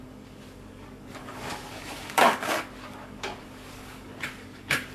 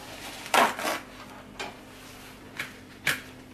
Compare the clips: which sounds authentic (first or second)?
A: second